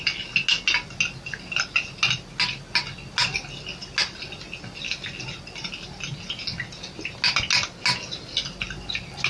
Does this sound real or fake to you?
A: real